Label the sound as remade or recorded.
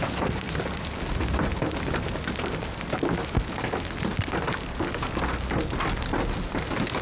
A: recorded